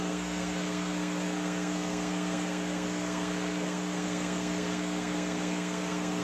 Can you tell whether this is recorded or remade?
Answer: remade